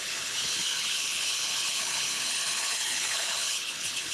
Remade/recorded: remade